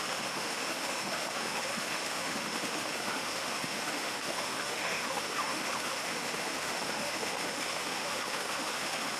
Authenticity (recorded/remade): remade